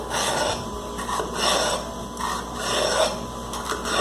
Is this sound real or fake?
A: real